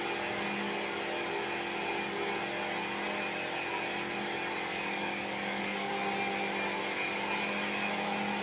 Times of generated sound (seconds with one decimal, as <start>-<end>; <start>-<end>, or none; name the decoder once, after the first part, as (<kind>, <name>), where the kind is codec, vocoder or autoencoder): 4.7-5.9 (codec, DAC)